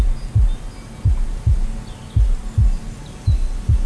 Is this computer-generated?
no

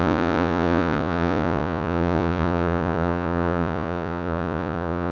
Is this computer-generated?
yes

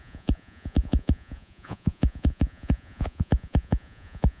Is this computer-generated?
yes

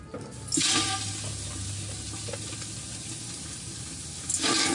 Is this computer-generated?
no